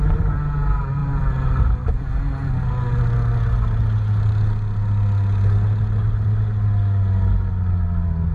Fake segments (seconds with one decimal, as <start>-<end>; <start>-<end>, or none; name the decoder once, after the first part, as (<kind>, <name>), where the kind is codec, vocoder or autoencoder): none